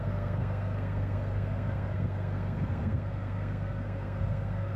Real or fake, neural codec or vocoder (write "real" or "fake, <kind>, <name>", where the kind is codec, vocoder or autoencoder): fake, codec, SNAC